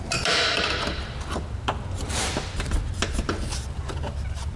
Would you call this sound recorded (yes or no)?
yes